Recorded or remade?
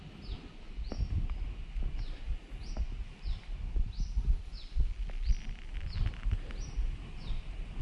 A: recorded